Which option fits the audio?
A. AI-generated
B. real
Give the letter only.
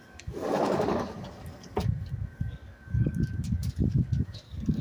A